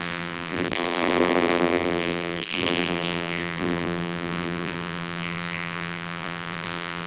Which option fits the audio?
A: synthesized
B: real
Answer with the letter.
A